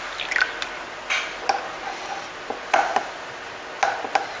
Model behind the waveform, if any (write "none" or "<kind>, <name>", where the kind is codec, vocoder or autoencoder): none